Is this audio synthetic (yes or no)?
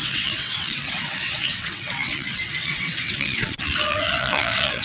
yes